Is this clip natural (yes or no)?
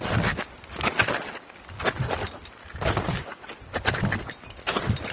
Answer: yes